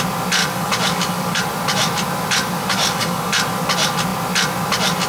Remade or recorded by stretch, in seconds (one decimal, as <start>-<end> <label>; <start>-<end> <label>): 0.0-0.4 recorded; 0.4-1.4 remade; 1.4-2.6 recorded; 2.6-3.3 remade; 3.3-5.1 recorded